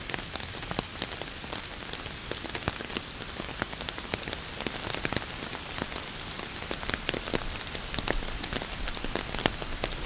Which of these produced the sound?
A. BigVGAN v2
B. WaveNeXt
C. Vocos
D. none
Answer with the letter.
D